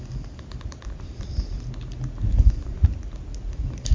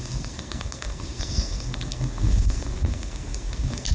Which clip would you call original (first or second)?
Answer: first